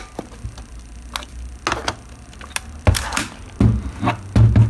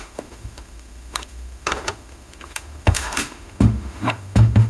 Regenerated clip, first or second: second